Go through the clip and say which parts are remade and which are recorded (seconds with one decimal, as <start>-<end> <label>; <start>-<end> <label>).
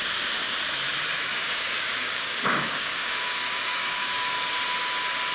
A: 0.0-1.3 recorded; 1.3-4.5 remade; 4.5-5.3 recorded